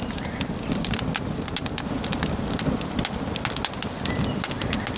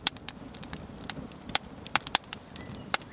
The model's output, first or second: second